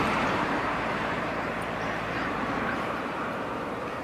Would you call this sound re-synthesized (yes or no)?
yes